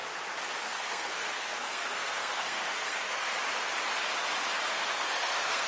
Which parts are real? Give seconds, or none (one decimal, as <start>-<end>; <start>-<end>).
0.0-0.6; 3.3-4.7

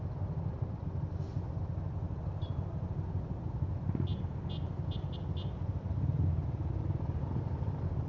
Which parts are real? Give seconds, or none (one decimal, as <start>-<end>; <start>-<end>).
0.0-8.1